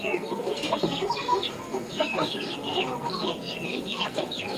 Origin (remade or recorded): remade